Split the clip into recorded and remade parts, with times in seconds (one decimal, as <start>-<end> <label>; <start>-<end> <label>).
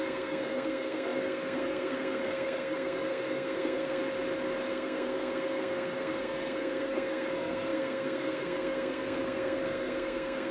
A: 0.0-4.0 remade; 4.0-4.7 recorded; 4.7-10.5 remade